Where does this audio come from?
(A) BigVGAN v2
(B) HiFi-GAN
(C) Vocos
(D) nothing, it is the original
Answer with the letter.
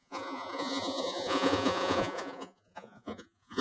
C